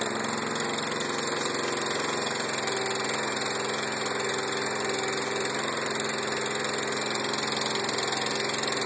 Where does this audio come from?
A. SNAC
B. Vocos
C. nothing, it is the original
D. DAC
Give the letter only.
C